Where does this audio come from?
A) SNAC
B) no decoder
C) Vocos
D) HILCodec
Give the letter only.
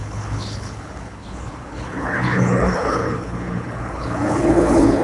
D